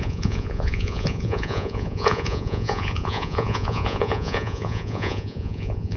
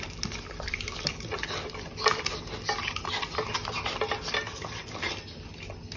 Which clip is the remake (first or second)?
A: first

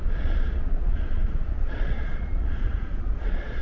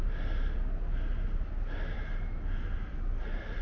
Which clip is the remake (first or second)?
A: first